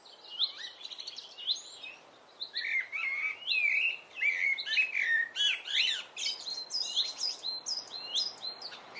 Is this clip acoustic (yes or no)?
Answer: yes